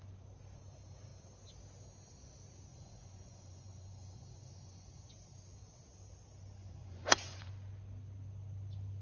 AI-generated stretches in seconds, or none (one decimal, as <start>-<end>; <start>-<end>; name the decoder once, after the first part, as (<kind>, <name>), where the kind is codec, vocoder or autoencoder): 2.7-5.1 (vocoder, Vocos); 6.6-7.5